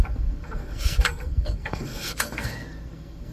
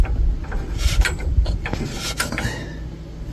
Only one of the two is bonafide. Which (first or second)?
second